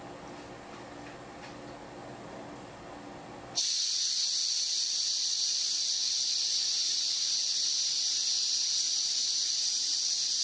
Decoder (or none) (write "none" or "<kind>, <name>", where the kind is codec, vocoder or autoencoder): none